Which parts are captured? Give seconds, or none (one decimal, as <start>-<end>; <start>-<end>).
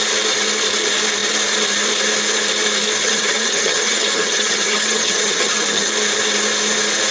0.0-3.0; 5.9-7.1